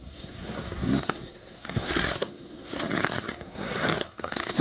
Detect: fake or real fake